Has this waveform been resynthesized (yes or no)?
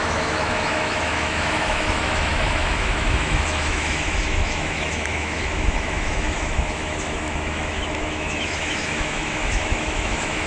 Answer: yes